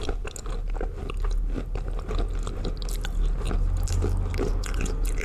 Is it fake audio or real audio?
real